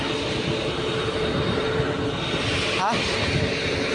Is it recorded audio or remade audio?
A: recorded